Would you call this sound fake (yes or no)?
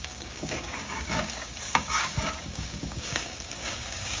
yes